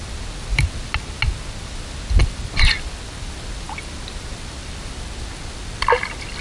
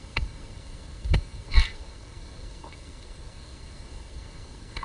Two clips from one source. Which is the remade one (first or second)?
second